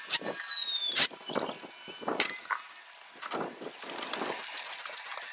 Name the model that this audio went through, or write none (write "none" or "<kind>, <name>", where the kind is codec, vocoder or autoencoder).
none